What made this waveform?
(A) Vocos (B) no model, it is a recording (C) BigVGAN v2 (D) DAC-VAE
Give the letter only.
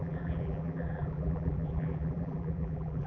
C